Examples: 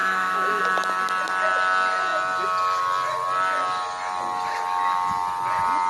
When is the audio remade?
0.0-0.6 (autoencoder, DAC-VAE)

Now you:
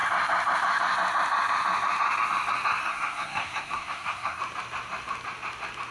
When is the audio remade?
2.8-4.4 (codec, SNAC)